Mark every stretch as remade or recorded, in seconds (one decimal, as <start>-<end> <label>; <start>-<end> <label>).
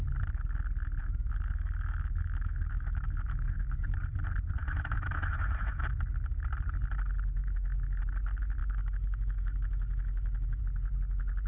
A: 0.0-1.0 recorded; 1.0-4.0 remade; 4.0-4.6 recorded; 4.6-5.9 remade; 5.9-7.4 recorded; 7.4-8.0 remade; 8.0-8.6 recorded; 8.6-10.6 remade; 10.6-11.5 recorded